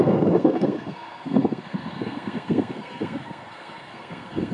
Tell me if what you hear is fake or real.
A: fake